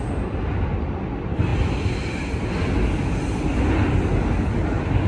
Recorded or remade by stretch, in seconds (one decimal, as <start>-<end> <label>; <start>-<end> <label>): 0.0-5.1 recorded